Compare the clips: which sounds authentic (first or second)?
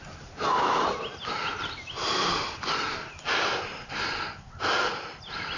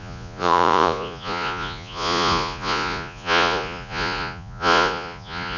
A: first